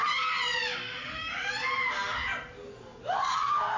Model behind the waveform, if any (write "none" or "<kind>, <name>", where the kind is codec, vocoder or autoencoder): none